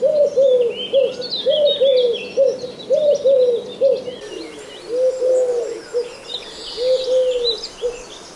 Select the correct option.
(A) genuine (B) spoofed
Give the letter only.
A